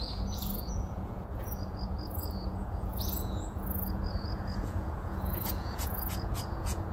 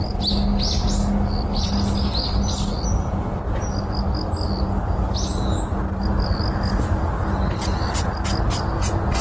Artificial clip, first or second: first